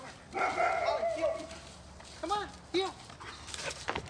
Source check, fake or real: real